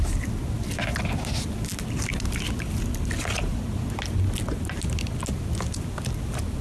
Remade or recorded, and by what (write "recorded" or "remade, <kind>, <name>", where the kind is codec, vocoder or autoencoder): recorded